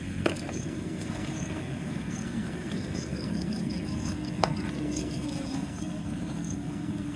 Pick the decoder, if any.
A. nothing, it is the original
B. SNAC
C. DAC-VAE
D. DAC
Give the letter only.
B